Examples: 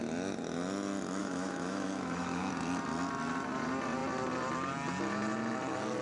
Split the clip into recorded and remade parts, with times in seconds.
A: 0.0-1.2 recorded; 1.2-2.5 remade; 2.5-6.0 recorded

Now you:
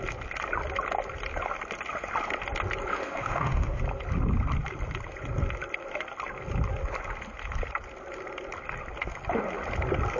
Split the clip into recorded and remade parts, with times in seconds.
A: 0.0-2.9 recorded; 2.9-3.8 remade; 3.8-10.2 recorded